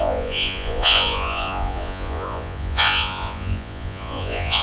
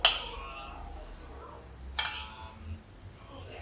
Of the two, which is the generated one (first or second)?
first